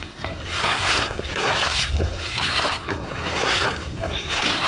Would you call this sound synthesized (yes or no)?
yes